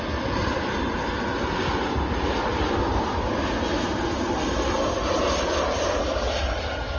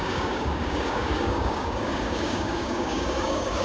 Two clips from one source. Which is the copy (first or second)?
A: second